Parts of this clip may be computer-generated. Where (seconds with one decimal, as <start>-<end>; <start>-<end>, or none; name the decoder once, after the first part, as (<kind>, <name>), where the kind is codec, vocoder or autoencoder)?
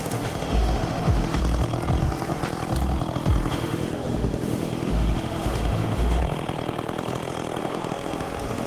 0.0-1.4 (autoencoder, DAC-VAE); 2.0-2.4; 3.5-6.2; 7.6-8.7